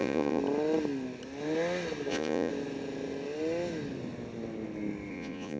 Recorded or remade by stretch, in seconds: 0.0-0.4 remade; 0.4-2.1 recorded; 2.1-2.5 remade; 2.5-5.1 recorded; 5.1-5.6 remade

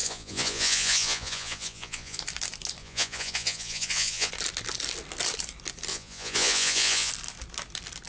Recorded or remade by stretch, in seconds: 0.0-2.2 remade; 2.2-2.8 recorded; 2.8-4.3 remade; 4.3-5.9 recorded; 5.9-7.1 remade; 7.1-8.1 recorded

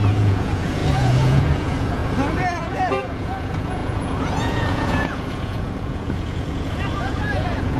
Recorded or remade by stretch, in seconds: 0.0-2.0 remade; 2.0-2.6 recorded; 2.6-7.8 remade

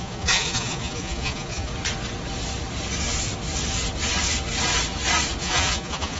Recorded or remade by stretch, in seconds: 0.0-1.7 remade; 1.7-5.4 recorded; 5.4-6.2 remade

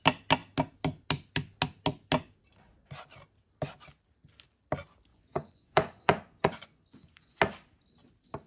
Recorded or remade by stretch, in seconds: 0.0-5.1 recorded; 5.1-7.4 remade; 7.4-8.5 recorded

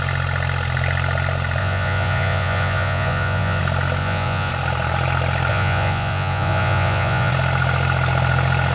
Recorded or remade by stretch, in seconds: 0.0-1.6 recorded; 1.6-3.6 remade; 3.6-4.0 recorded; 4.0-4.5 remade; 4.5-5.5 recorded; 5.5-7.3 remade; 7.3-8.7 recorded